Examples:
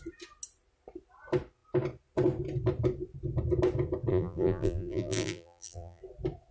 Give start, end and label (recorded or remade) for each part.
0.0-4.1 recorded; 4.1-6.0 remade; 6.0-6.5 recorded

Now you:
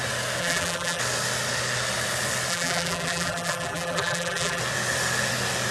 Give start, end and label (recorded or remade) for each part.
0.0-0.4 recorded; 0.4-1.0 remade; 1.0-2.5 recorded; 2.5-4.6 remade; 4.6-5.7 recorded

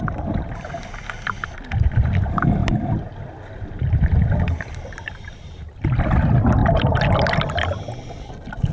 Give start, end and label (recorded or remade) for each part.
0.0-2.6 recorded; 2.6-5.6 remade; 5.6-8.7 recorded

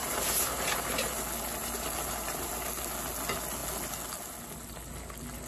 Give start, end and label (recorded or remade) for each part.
0.0-1.2 remade; 1.2-1.6 recorded; 1.6-2.5 remade; 2.5-5.5 recorded

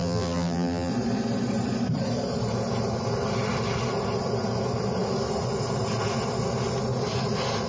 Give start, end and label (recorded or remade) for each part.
0.0-0.9 remade; 0.9-7.7 recorded

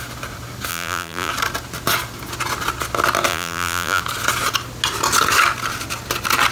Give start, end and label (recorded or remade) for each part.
0.0-0.7 recorded; 0.7-1.3 remade; 1.3-3.3 recorded; 3.3-4.0 remade; 4.0-6.5 recorded

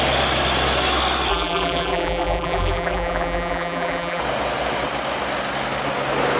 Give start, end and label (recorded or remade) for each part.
0.0-1.3 recorded; 1.3-4.2 remade; 4.2-6.4 recorded